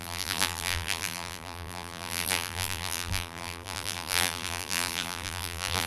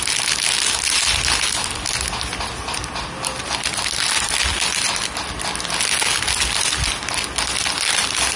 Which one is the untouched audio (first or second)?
second